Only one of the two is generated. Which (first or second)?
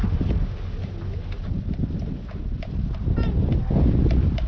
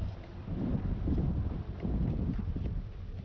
second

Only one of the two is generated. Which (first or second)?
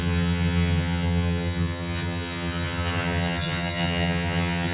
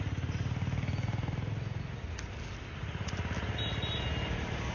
first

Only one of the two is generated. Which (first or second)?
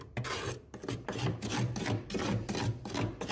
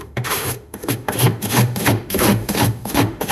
second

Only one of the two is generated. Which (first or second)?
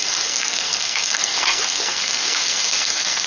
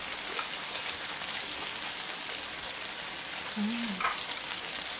first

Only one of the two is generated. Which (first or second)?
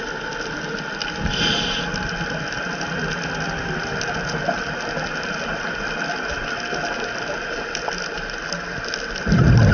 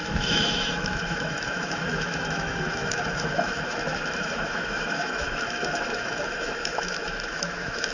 second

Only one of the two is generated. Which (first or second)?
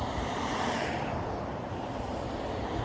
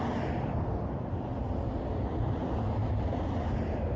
first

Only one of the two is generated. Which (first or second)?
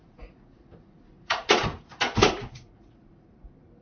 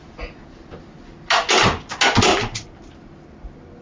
first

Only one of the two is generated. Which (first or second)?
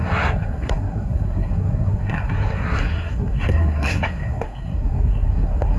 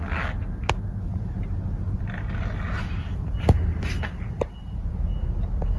first